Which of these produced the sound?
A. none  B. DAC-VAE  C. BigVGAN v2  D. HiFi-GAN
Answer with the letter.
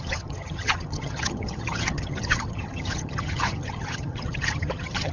D